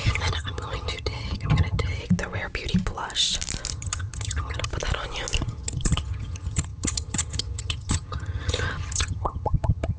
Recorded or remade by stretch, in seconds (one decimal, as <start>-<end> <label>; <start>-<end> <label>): 0.0-2.0 remade; 2.0-3.7 recorded; 3.7-4.7 remade; 4.7-5.4 recorded; 5.4-10.0 remade